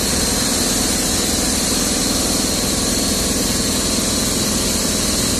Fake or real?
real